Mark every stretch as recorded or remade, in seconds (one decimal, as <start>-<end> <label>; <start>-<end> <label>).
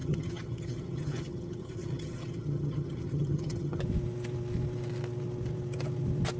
0.0-3.8 remade; 3.8-6.4 recorded